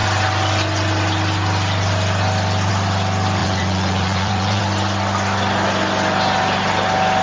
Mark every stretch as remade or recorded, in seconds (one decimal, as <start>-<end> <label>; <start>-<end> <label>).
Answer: 0.0-3.4 recorded; 3.4-4.6 remade; 4.6-7.2 recorded